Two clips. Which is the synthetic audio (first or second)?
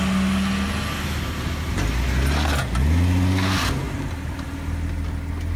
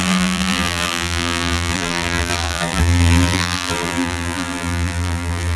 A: second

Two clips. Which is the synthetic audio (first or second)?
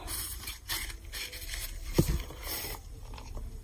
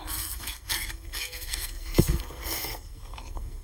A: second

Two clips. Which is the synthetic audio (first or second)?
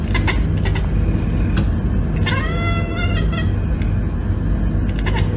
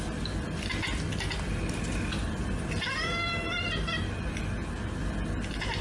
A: second